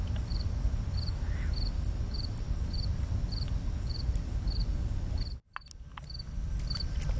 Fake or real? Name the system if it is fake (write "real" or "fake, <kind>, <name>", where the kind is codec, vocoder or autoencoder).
real